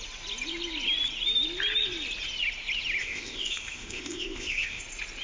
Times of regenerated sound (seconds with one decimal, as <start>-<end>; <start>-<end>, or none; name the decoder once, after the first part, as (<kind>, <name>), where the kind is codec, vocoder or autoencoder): 3.0-4.8 (codec, ZipCodec)